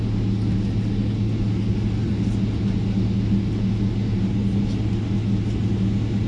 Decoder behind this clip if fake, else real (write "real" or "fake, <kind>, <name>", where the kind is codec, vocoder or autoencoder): real